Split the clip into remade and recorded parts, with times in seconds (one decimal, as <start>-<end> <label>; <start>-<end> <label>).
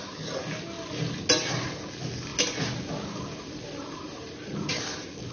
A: 0.0-5.3 recorded